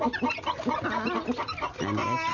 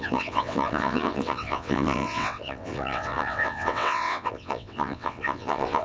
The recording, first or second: first